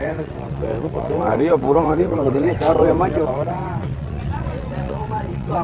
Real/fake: fake